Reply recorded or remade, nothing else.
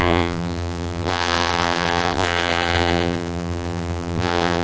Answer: remade